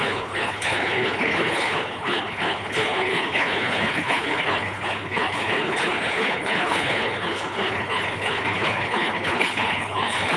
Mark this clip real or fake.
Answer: fake